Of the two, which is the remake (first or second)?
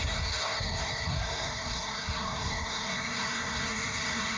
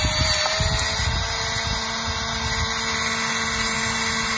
first